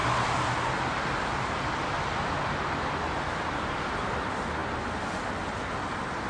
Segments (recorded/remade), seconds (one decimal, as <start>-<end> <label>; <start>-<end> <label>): 0.0-6.3 recorded